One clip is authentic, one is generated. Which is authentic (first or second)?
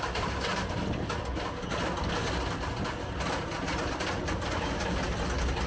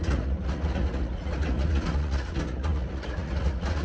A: first